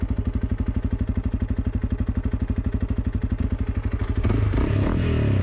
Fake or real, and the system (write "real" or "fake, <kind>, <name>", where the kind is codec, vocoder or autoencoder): real